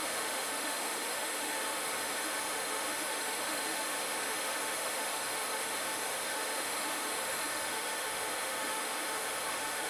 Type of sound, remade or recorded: remade